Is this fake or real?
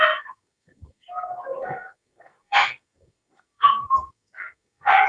fake